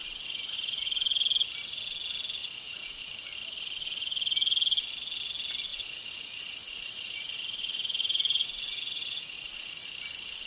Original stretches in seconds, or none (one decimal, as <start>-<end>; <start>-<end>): 0.8-2.4; 3.1-5.7; 9.9-10.5